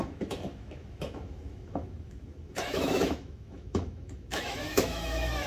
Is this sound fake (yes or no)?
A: yes